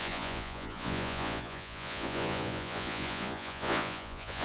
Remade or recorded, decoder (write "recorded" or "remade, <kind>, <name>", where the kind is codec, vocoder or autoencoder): remade, vocoder, Vocos